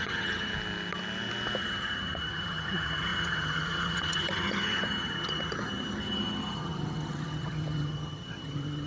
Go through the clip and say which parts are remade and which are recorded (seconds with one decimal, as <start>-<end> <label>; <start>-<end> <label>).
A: 0.0-0.5 remade; 0.5-1.6 recorded; 1.6-8.9 remade